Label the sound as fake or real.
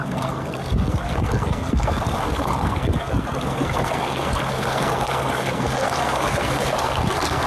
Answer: fake